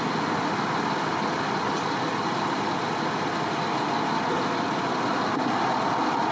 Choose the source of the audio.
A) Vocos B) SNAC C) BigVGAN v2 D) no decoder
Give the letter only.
D